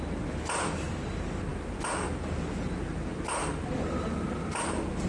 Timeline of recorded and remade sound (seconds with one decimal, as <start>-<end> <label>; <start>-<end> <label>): 0.0-5.1 recorded